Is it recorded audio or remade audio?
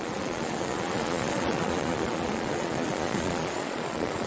remade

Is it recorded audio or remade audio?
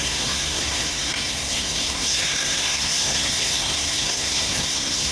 remade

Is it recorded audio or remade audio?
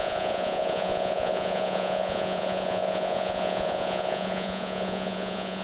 remade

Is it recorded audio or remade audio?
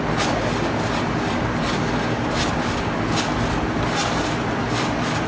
recorded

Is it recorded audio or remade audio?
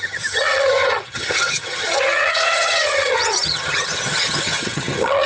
remade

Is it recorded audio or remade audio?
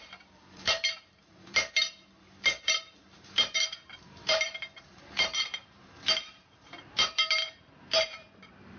remade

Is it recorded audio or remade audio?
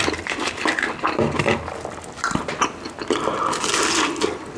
recorded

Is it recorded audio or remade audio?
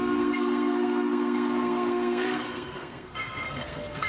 remade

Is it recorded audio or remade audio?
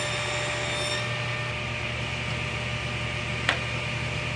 recorded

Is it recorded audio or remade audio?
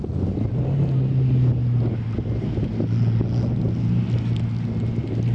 recorded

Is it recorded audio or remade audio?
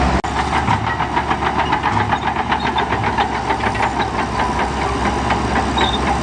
recorded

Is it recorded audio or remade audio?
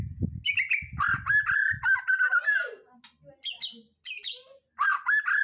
recorded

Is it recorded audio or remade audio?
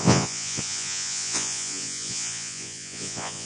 remade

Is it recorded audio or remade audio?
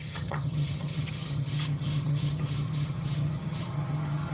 remade